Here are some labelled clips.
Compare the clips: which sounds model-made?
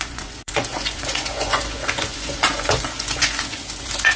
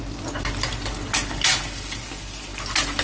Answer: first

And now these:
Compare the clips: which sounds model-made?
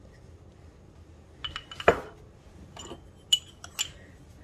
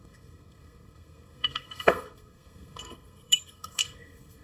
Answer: second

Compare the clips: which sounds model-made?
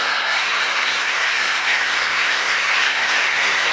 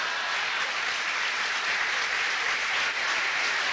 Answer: first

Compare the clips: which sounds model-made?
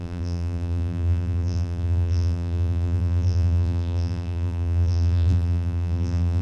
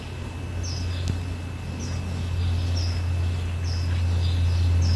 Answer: first